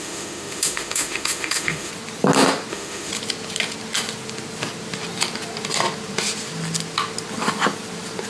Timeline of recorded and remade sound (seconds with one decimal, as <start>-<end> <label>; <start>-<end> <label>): 0.0-1.9 remade; 1.9-2.7 recorded; 2.7-3.1 remade; 3.1-8.3 recorded